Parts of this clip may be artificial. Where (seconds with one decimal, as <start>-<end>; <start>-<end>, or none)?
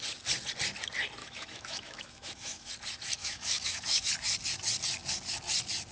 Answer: 1.2-2.7; 3.2-4.1